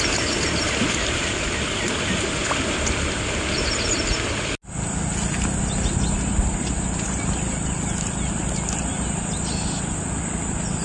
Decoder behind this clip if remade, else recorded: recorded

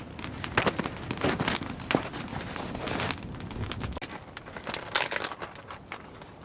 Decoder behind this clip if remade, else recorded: recorded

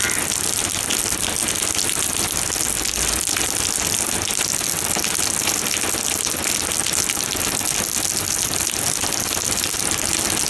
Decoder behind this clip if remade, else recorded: recorded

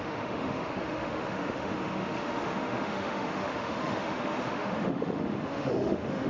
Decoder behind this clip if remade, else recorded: remade, autoencoder, DAC-VAE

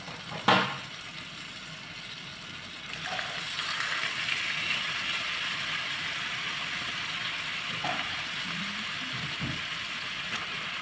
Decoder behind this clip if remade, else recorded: recorded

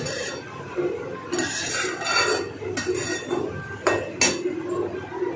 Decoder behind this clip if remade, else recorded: recorded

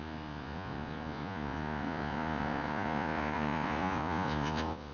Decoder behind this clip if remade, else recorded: remade, vocoder, Vocos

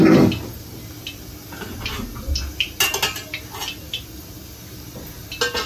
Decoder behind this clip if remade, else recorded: recorded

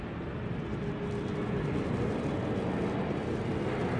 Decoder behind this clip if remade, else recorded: recorded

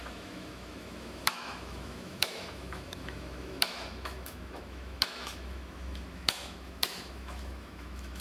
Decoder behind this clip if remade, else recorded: remade, autoencoder, DAC-VAE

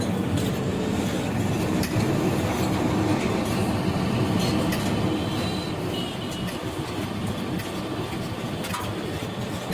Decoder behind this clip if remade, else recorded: recorded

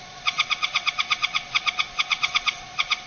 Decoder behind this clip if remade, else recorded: remade, vocoder, Vocos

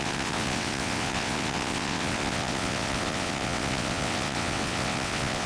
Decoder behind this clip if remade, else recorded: remade, vocoder, WaveNeXt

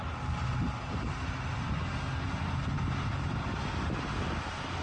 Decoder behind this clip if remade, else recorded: recorded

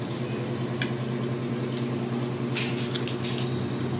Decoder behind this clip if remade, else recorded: recorded